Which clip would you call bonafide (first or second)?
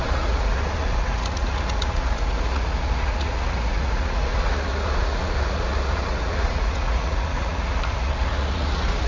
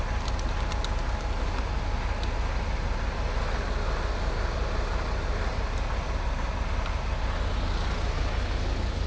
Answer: second